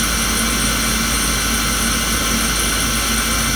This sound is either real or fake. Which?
real